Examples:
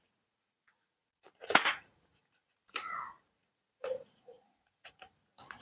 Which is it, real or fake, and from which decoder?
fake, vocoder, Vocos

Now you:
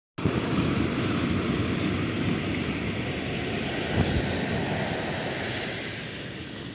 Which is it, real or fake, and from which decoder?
real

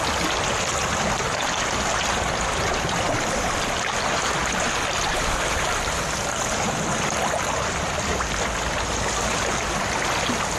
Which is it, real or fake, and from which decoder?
real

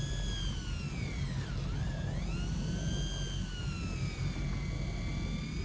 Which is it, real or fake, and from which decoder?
real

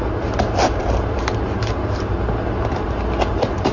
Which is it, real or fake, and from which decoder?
real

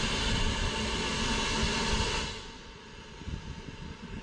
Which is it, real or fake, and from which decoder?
real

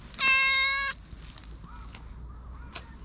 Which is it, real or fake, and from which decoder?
real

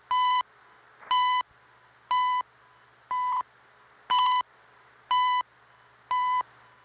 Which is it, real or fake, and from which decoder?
real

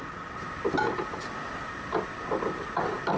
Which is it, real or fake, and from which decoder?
real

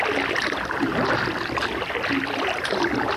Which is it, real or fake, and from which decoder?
real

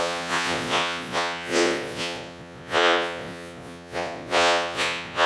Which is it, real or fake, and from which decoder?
fake, vocoder, Vocos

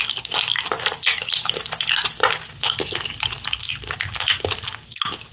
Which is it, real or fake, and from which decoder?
real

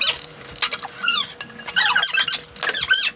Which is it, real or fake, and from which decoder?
real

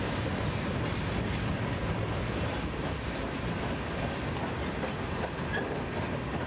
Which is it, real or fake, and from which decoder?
real